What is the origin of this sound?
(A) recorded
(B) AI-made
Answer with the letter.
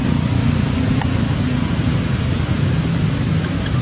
A